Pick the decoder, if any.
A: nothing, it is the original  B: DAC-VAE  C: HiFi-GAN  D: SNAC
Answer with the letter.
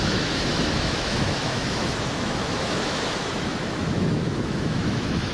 B